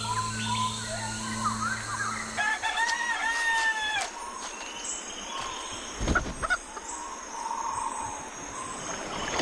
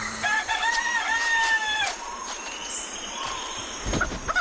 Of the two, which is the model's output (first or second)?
second